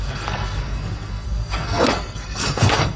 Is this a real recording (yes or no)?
no